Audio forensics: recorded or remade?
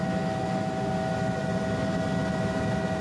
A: recorded